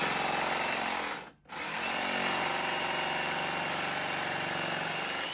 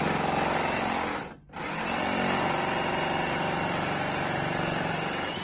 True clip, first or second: first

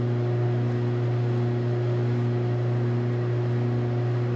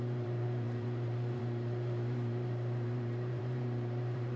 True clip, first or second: first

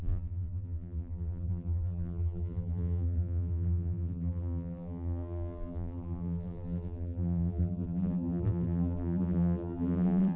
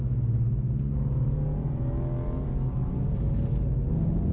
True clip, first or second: second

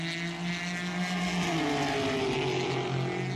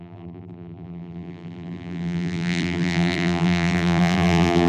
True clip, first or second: first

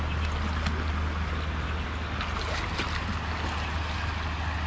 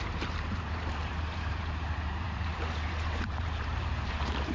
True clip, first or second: first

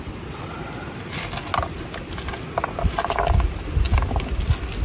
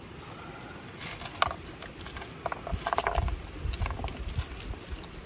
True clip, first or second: first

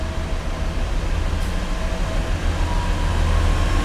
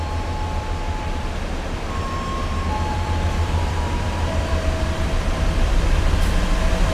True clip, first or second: first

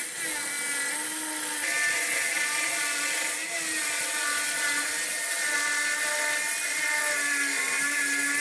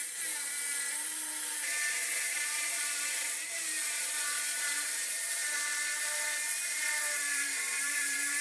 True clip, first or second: first